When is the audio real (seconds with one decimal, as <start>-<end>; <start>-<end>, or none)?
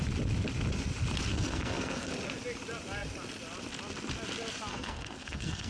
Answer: 0.0-1.3; 2.1-4.7